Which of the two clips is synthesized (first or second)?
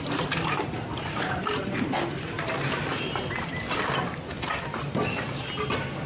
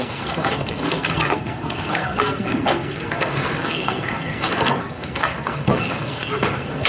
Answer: second